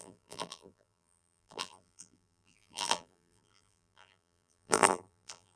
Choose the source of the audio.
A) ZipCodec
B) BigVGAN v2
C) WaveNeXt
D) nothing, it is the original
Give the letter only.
B